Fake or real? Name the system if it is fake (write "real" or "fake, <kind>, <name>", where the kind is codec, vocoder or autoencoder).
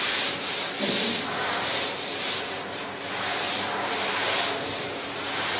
real